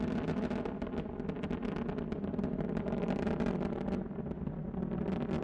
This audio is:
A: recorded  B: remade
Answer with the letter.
A